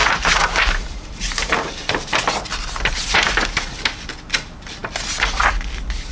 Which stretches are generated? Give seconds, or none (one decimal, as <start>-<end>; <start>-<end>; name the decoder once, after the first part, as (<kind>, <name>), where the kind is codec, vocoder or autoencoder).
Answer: 0.0-2.2 (vocoder, BigVGAN v2)